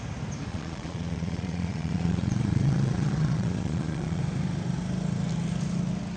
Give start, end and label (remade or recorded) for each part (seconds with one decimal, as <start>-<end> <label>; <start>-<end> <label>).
0.0-0.5 recorded; 0.5-4.2 remade; 4.2-6.2 recorded